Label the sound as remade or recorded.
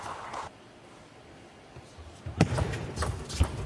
recorded